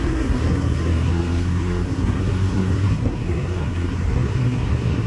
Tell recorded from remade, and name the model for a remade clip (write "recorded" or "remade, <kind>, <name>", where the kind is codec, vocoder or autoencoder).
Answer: remade, codec, SNAC